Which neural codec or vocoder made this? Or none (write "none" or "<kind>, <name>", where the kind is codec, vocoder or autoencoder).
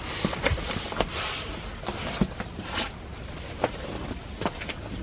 none